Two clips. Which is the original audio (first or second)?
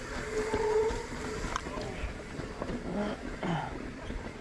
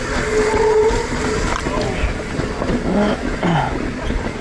second